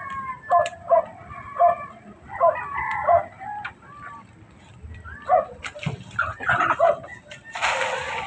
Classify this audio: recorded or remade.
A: recorded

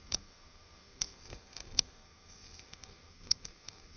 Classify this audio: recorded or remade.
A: remade